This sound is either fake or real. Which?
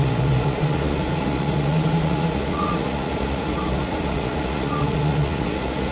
fake